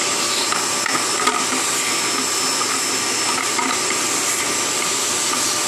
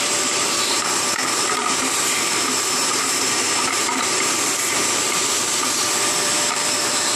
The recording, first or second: first